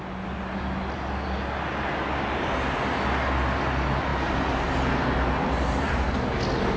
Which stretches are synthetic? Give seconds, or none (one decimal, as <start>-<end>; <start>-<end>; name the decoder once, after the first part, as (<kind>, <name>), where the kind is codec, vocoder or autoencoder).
none